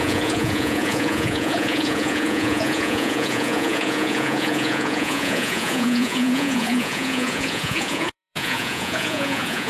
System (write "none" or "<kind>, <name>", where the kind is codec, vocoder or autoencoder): vocoder, Vocos